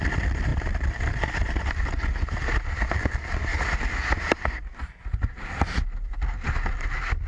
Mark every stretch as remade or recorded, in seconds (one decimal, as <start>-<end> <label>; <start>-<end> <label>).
0.0-0.5 recorded; 0.5-1.9 remade; 1.9-3.5 recorded; 3.5-5.8 remade; 5.8-7.3 recorded